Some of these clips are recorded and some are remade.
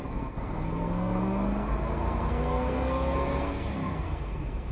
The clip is remade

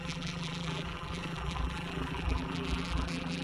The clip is remade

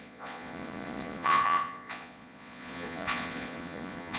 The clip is remade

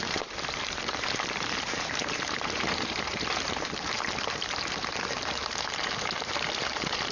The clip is remade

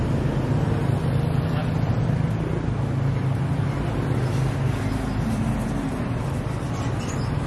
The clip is recorded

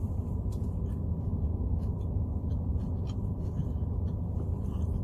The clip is recorded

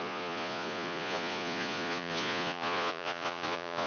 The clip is remade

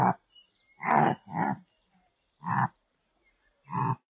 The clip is remade